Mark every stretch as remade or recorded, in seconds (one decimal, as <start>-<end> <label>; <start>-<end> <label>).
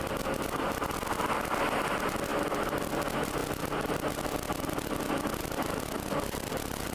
0.0-6.9 recorded